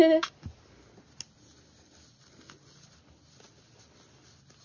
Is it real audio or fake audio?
real